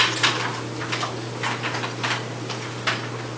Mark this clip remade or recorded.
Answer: recorded